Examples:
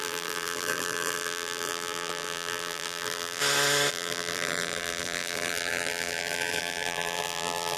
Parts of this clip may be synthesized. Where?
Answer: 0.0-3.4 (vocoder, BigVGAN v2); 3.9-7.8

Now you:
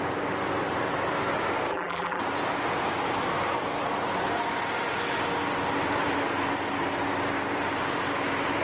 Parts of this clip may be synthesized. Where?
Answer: 1.7-2.2 (vocoder, BigVGAN v2)

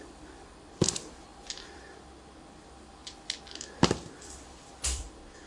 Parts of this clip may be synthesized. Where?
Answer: 0.0-3.0 (vocoder, BigVGAN v2); 3.6-5.5

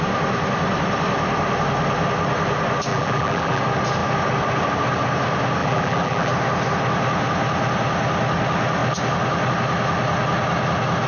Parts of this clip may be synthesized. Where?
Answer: 2.9-3.6 (vocoder, BigVGAN v2); 5.6-6.3

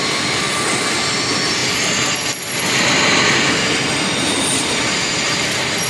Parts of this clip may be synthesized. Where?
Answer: none

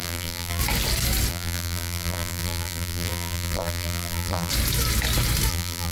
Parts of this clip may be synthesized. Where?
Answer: 0.0-0.6 (vocoder, BigVGAN v2); 1.3-4.5; 5.5-5.9

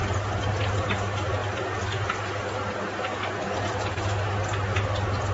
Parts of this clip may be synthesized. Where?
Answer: none